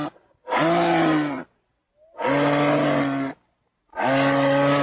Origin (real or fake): real